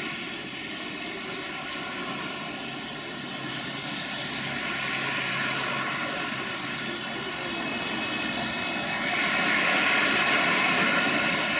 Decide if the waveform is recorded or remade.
recorded